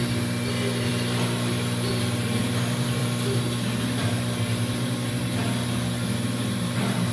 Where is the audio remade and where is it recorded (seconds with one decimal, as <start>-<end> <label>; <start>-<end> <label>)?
0.0-0.9 recorded; 0.9-2.0 remade; 2.0-3.0 recorded; 3.0-5.1 remade; 5.1-7.1 recorded